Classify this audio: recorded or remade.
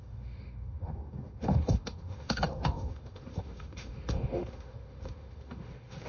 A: remade